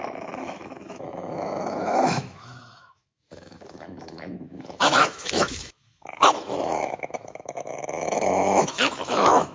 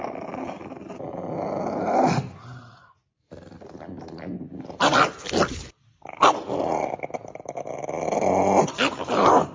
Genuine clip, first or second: second